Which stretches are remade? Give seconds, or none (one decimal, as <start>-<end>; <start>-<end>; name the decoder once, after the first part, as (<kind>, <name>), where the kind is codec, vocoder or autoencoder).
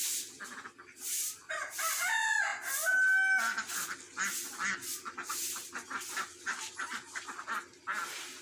none